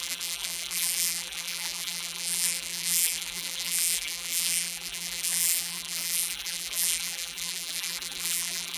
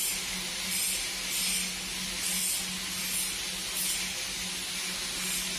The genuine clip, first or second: second